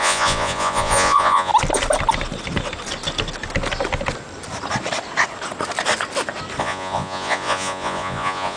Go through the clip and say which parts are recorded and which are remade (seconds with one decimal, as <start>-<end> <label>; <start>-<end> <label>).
0.0-1.5 remade; 1.5-6.6 recorded; 6.6-8.6 remade